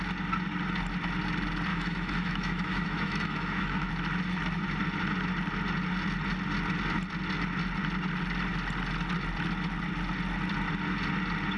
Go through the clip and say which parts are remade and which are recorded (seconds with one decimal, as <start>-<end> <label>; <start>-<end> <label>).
0.0-1.7 recorded; 1.7-3.9 remade; 3.9-11.6 recorded